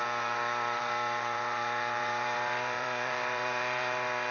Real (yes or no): no